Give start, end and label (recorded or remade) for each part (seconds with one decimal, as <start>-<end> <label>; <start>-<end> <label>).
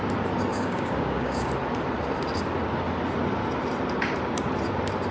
0.0-0.5 recorded; 0.5-1.5 remade; 1.5-5.1 recorded